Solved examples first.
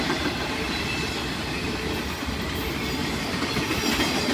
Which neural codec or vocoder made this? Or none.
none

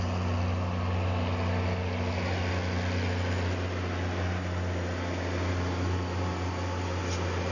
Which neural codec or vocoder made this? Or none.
none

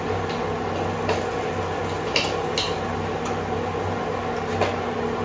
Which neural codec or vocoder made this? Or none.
none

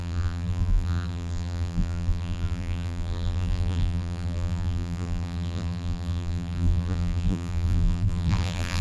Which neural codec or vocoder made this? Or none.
vocoder, BigVGAN v2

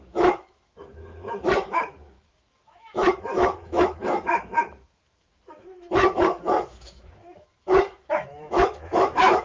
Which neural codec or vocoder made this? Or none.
autoencoder, DAC-VAE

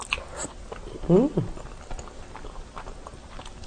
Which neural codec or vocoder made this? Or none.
none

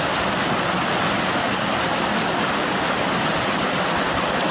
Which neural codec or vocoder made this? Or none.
none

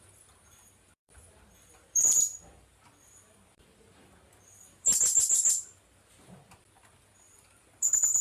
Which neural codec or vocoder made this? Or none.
vocoder, BigVGAN v2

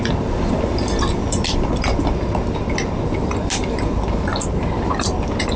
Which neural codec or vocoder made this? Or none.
none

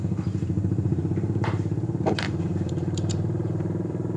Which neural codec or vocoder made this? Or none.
vocoder, BigVGAN v2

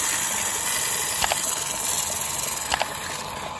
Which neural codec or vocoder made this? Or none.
none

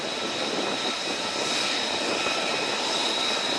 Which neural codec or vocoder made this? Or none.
none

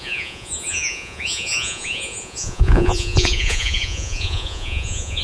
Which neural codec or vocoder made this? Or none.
vocoder, Vocos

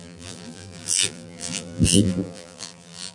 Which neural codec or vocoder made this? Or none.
vocoder, BigVGAN v2